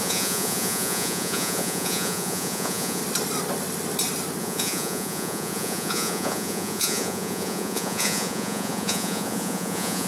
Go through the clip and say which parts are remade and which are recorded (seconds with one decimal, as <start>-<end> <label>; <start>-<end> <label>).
0.0-3.0 remade; 3.0-4.4 recorded; 4.4-10.1 remade